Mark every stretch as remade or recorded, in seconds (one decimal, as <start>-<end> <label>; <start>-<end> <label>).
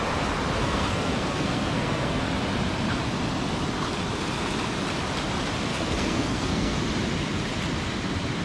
0.0-0.6 recorded; 0.6-2.2 remade; 2.2-5.7 recorded; 5.7-6.8 remade; 6.8-8.4 recorded